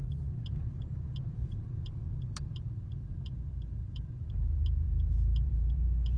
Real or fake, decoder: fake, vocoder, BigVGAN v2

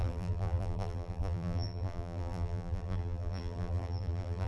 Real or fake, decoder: fake, vocoder, BigVGAN v2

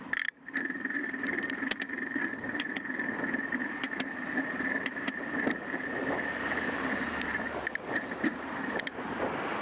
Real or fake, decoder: fake, vocoder, BigVGAN v2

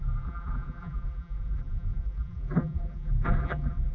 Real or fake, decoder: fake, vocoder, BigVGAN v2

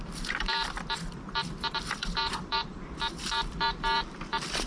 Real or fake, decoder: fake, vocoder, BigVGAN v2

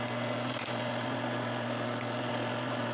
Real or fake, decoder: fake, vocoder, BigVGAN v2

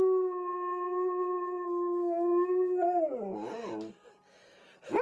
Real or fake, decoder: real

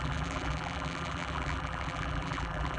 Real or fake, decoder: fake, vocoder, BigVGAN v2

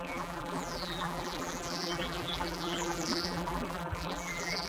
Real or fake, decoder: fake, vocoder, BigVGAN v2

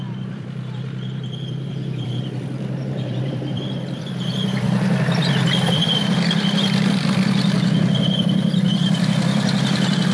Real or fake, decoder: fake, vocoder, BigVGAN v2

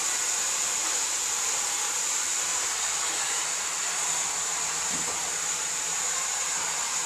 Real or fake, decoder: fake, vocoder, BigVGAN v2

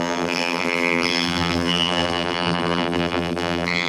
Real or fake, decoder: fake, vocoder, BigVGAN v2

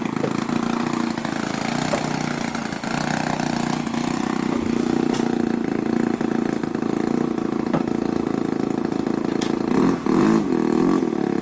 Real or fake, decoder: real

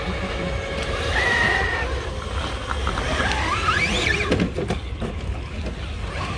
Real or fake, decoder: real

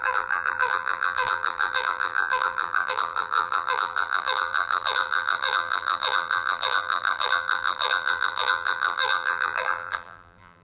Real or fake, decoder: fake, vocoder, BigVGAN v2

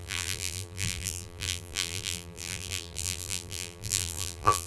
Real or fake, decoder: fake, vocoder, BigVGAN v2